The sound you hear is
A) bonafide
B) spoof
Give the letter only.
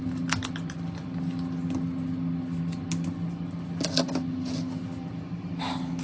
A